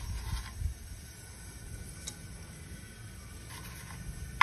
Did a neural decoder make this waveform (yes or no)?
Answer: no